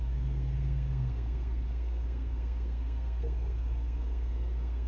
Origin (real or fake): fake